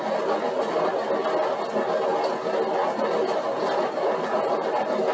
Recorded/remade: recorded